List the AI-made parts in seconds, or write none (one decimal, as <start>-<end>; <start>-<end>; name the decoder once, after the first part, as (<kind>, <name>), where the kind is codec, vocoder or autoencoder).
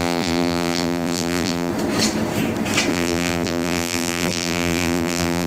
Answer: 0.0-1.7 (vocoder, BigVGAN v2); 2.9-5.5